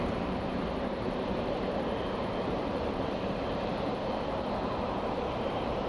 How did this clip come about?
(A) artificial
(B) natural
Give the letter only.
A